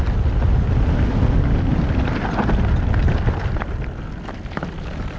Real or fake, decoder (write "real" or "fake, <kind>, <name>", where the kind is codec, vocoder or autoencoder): real